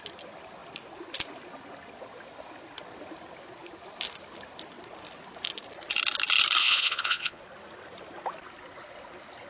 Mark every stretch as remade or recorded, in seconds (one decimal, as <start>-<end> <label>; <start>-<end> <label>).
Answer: 0.0-6.6 recorded; 6.6-7.4 remade; 7.4-9.5 recorded